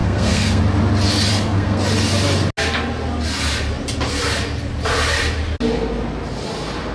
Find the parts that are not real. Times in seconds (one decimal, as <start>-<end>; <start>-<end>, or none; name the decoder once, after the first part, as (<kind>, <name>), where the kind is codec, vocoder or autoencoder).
0.0-0.6 (codec, SNAC); 1.3-1.8